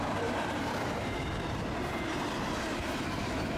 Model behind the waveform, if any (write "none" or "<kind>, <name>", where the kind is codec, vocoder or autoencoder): vocoder, BigVGAN v2